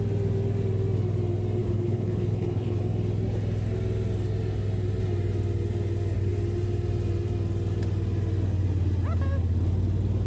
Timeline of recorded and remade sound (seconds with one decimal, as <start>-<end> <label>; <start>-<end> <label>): 0.0-1.6 recorded; 1.6-2.8 remade; 2.8-10.3 recorded